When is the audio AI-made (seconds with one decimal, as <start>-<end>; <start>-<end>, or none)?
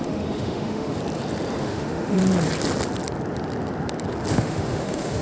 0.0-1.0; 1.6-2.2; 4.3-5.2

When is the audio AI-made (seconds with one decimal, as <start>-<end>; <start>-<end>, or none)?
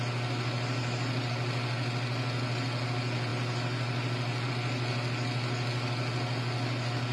none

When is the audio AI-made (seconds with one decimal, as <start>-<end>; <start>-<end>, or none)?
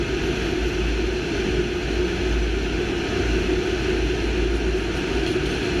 none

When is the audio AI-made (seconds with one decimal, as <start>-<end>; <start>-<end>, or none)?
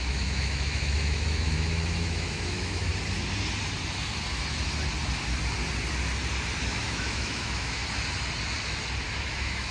0.0-2.9; 6.7-7.8; 9.2-9.7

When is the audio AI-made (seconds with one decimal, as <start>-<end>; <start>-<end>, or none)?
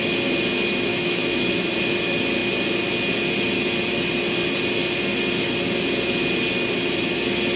0.9-1.5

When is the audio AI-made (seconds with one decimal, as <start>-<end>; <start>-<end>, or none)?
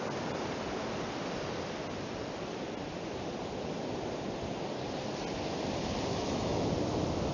6.1-6.7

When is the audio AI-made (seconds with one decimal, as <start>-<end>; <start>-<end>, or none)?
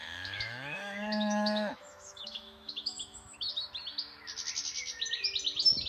0.0-3.5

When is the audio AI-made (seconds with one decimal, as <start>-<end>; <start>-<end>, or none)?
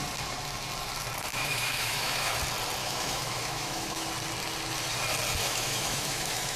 1.3-2.4; 2.8-4.1; 5.4-6.6